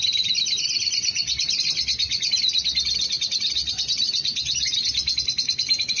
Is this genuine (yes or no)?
yes